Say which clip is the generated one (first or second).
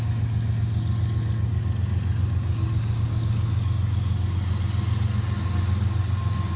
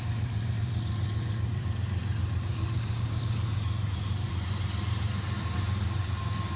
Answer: second